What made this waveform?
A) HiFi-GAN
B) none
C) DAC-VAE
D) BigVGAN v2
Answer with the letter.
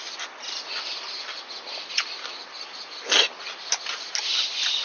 B